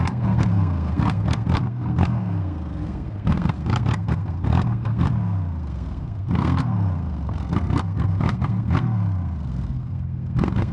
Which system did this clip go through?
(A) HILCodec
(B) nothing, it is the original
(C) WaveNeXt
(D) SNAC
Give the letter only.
D